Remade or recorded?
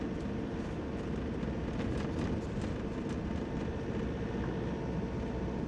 recorded